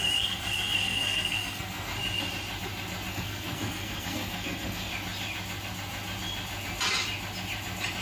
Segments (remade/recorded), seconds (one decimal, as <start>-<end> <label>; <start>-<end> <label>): 0.0-1.9 remade; 1.9-3.1 recorded; 3.1-4.9 remade; 4.9-8.0 recorded